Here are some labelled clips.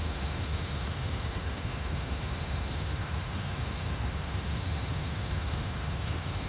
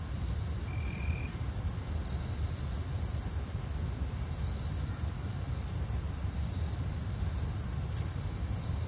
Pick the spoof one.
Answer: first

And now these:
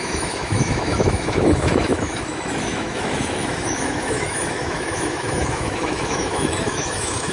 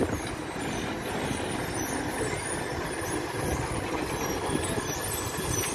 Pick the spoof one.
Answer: first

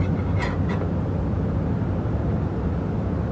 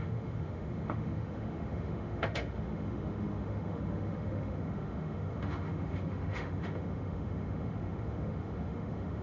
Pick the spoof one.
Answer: second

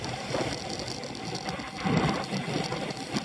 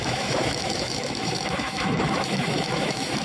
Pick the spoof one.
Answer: second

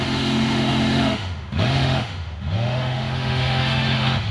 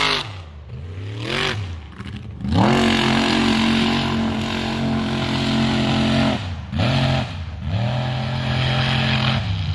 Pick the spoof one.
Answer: first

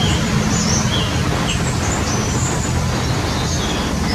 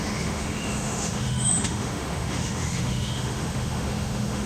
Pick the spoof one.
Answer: second